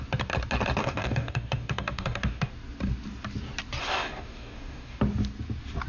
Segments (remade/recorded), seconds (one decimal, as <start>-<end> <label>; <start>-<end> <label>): 0.0-0.8 recorded; 0.8-2.5 remade; 2.5-3.8 recorded; 3.8-5.0 remade; 5.0-5.9 recorded